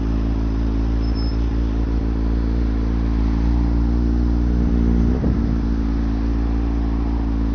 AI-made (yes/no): no